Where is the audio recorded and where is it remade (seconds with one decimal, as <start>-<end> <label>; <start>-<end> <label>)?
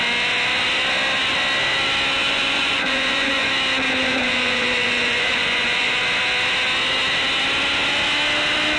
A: 0.0-2.2 recorded; 2.2-3.5 remade; 3.5-4.0 recorded; 4.0-6.0 remade; 6.0-8.8 recorded